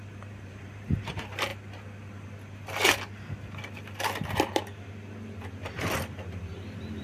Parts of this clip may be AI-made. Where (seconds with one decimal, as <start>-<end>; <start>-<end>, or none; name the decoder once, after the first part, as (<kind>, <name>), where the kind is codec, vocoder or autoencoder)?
0.0-1.5 (vocoder, BigVGAN v2); 5.7-7.0